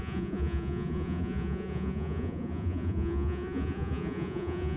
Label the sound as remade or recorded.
remade